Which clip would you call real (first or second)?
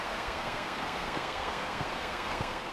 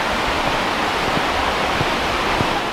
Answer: second